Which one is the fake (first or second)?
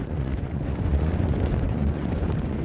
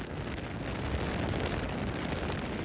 first